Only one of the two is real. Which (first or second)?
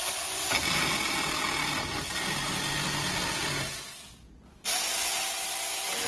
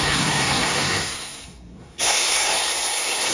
first